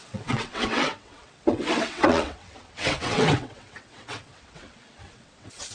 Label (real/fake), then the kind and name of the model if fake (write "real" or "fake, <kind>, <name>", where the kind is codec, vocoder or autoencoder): fake, vocoder, WaveNeXt